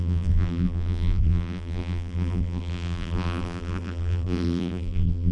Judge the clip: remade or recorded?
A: remade